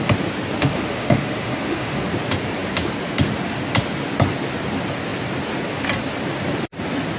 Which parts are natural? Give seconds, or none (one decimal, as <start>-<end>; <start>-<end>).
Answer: 0.0-0.6; 2.0-7.2